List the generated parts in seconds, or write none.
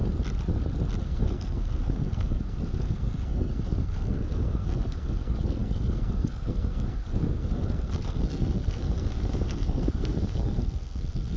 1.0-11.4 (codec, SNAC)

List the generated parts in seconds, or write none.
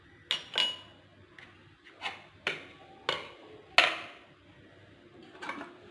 none